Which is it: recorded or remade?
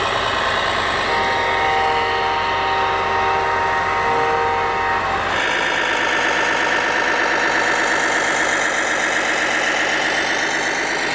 recorded